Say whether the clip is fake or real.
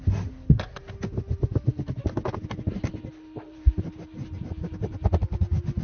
real